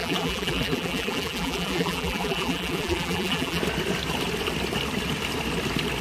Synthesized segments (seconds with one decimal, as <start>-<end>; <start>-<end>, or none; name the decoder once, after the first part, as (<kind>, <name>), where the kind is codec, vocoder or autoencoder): 0.0-3.6 (vocoder, BigVGAN v2)